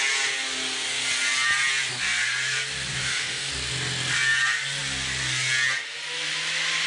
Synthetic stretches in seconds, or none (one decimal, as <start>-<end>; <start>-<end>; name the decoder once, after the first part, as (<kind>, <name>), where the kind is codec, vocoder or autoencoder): 3.0-3.5 (autoencoder, DAC-VAE)